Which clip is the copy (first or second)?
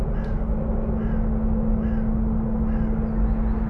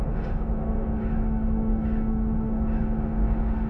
second